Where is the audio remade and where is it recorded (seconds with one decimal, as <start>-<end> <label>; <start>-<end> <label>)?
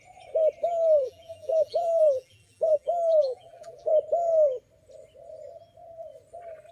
0.0-0.6 recorded; 0.6-3.9 remade; 3.9-6.7 recorded